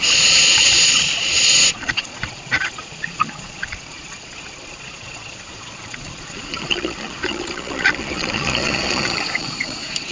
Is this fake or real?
fake